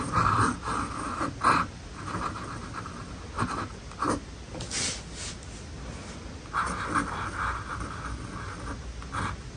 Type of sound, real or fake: real